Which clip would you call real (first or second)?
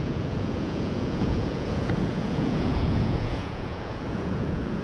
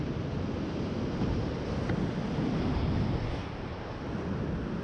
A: second